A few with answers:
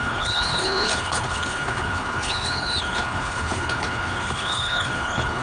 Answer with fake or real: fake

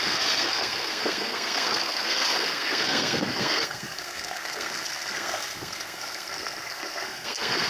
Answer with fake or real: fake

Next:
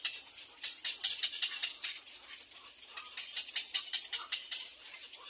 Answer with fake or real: real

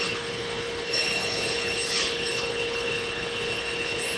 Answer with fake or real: fake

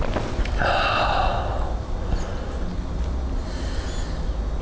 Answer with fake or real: real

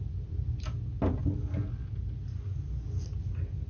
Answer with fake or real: real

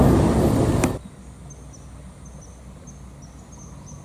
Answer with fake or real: real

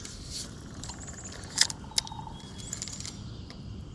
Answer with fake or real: real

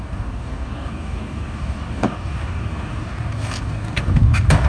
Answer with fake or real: fake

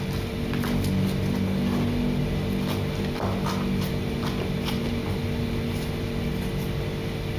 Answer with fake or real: real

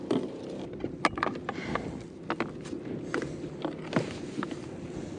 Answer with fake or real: real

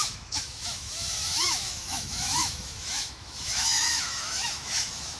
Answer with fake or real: fake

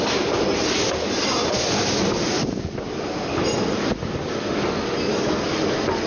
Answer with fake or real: real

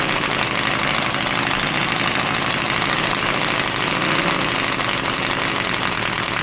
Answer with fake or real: real